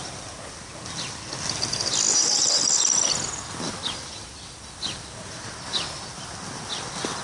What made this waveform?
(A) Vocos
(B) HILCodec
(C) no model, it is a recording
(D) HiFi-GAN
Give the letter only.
C